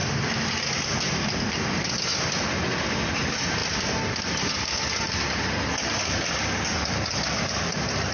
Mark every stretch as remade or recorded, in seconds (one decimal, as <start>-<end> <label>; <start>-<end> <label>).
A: 0.0-2.1 remade; 2.1-3.1 recorded; 3.1-8.1 remade